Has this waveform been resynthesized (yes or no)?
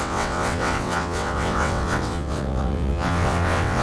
yes